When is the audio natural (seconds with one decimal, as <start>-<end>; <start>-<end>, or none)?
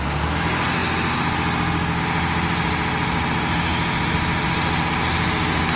0.0-5.8